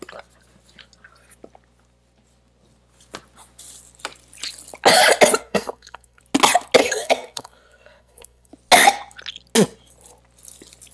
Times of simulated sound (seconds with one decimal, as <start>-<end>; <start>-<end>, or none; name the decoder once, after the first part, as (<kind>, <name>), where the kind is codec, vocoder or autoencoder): 5.4-6.2 (codec, SNAC); 6.8-8.5